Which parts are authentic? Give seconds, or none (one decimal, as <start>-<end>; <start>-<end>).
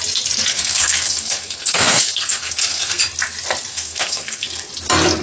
0.0-0.5; 3.0-3.7; 4.7-5.2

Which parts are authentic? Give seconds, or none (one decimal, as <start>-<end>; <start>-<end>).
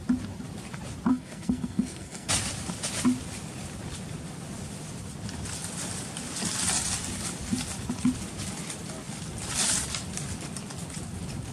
0.0-1.1; 2.3-11.5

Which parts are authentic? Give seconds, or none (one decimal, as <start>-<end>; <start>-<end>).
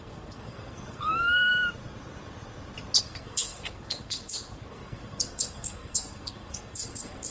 1.5-3.0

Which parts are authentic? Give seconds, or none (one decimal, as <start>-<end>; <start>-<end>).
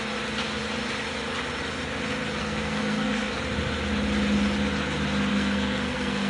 0.0-2.4; 3.4-5.3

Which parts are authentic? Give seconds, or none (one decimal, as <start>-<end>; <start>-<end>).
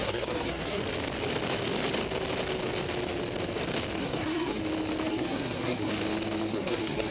0.8-4.0; 4.6-5.1; 5.9-6.5